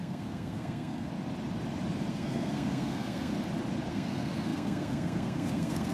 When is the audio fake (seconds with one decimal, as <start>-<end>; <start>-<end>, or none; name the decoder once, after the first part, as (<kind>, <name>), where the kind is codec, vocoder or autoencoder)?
0.0-1.1 (codec, SNAC); 2.1-3.3; 3.9-5.9